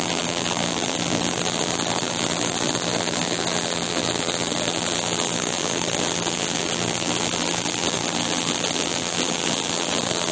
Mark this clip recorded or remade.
remade